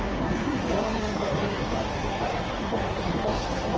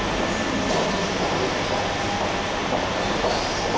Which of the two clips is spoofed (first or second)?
first